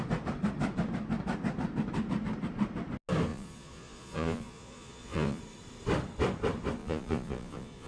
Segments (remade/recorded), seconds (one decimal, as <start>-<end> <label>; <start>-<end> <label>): 0.0-3.3 recorded; 3.3-5.4 remade; 5.4-6.8 recorded; 6.8-7.9 remade